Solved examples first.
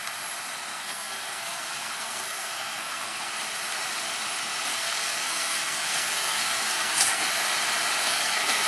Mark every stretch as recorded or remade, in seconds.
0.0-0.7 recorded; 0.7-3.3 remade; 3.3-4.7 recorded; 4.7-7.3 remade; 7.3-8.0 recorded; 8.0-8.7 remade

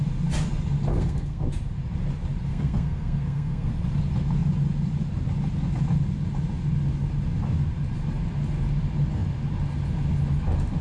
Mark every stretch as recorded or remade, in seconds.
0.0-0.9 recorded; 0.9-1.5 remade; 1.5-2.5 recorded; 2.5-3.7 remade; 3.7-10.8 recorded

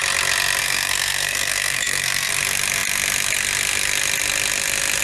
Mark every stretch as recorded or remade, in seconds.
0.0-0.6 recorded; 0.6-2.3 remade; 2.3-5.0 recorded

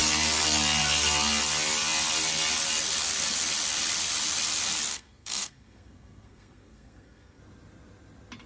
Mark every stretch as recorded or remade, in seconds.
0.0-4.9 recorded; 4.9-7.4 remade; 7.4-8.5 recorded